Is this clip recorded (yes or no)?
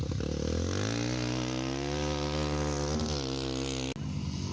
yes